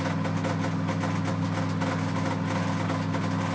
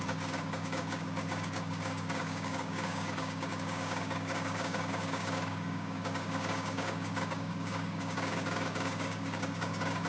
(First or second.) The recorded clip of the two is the first